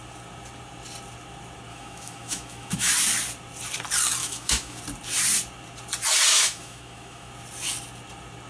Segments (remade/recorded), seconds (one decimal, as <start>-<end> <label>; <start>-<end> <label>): 0.0-1.7 recorded; 1.7-2.9 remade; 2.9-4.2 recorded; 4.2-4.8 remade; 4.8-6.3 recorded; 6.3-7.3 remade; 7.3-8.5 recorded